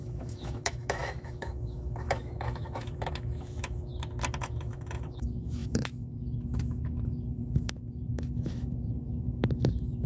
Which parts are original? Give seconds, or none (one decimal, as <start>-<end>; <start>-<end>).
3.9-4.4